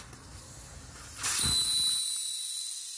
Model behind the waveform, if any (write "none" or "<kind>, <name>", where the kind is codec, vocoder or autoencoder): none